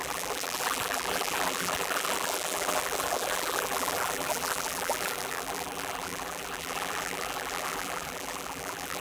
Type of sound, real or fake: fake